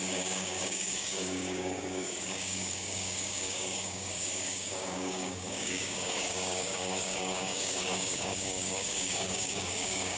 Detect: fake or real fake